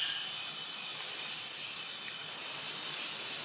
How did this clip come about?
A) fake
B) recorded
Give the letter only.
B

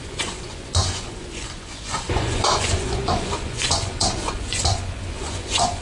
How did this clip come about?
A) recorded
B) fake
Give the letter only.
B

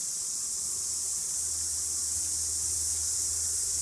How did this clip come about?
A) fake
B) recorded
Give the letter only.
B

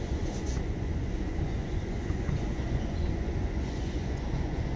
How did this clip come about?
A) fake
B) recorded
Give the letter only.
A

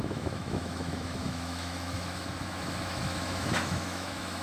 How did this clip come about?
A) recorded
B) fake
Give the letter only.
B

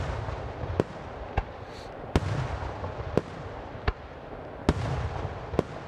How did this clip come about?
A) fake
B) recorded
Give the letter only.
B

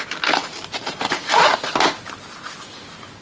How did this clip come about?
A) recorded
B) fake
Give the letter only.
A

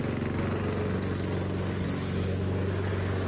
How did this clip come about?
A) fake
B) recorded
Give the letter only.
B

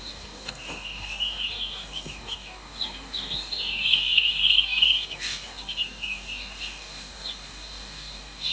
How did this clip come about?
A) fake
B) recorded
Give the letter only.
A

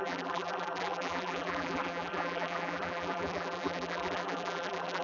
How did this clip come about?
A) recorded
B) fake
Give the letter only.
B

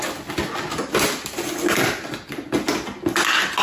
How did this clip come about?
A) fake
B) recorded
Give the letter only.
B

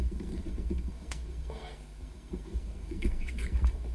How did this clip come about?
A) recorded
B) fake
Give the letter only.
B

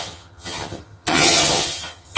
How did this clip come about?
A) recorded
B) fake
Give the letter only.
B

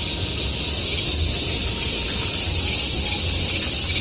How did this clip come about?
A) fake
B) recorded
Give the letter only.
B